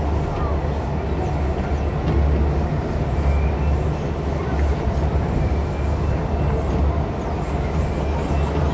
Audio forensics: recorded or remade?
recorded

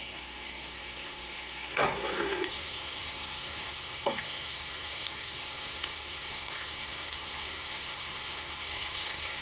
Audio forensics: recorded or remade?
remade